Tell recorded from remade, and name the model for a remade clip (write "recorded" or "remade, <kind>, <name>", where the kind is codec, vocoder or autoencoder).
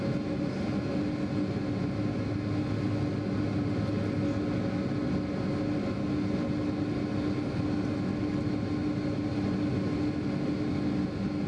recorded